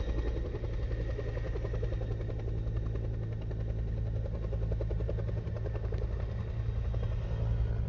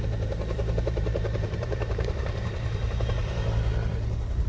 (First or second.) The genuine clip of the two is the first